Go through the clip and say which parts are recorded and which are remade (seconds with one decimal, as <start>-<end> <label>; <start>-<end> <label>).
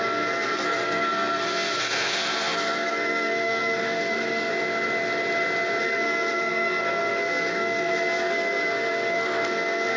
0.0-4.5 remade; 4.5-5.8 recorded; 5.8-10.0 remade